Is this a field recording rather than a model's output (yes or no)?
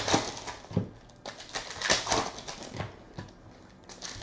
yes